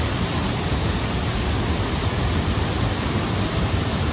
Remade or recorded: recorded